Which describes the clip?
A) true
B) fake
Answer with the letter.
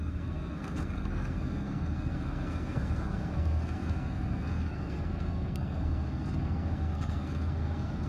B